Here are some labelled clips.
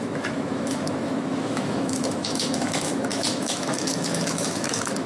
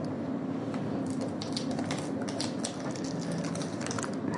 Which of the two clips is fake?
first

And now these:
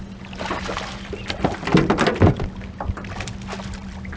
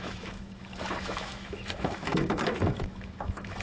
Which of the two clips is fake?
second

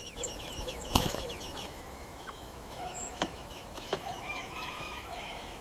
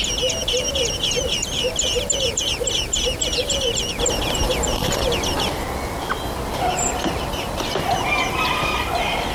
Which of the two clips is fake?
first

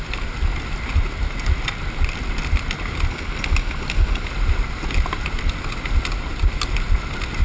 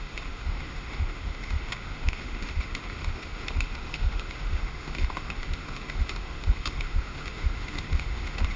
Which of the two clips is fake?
second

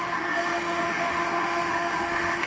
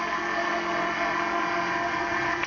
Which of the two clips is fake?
first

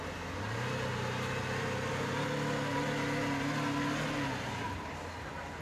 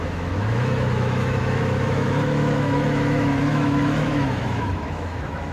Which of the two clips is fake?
second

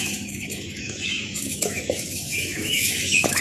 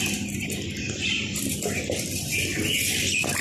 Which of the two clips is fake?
first